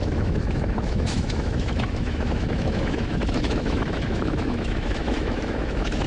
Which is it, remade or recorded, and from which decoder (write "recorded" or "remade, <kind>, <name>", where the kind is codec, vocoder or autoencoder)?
remade, autoencoder, DAC-VAE